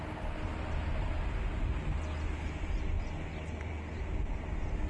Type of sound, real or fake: real